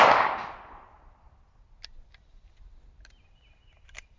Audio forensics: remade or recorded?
recorded